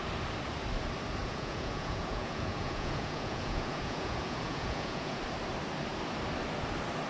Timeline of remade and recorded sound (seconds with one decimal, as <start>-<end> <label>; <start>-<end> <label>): 0.0-1.2 recorded; 1.2-5.2 remade; 5.2-7.1 recorded